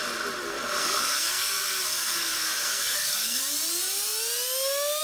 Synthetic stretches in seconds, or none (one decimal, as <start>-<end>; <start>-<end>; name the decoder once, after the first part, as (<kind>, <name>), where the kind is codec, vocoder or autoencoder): 0.4-3.4 (codec, SNAC)